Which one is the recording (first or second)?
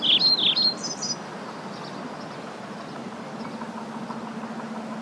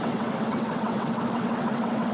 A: first